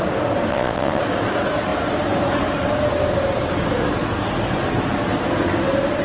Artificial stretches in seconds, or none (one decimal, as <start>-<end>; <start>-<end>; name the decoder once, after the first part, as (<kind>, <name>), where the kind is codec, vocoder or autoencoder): 0.5-1.0 (vocoder, WaveNeXt)